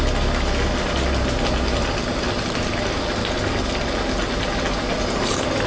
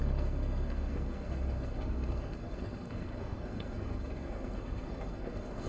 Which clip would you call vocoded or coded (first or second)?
second